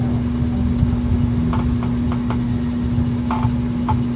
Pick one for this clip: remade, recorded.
recorded